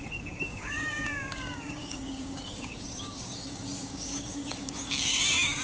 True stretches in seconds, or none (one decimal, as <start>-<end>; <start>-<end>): none